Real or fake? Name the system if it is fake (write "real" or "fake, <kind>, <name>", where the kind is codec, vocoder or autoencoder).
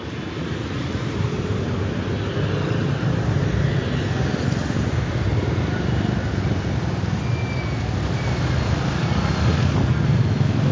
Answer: real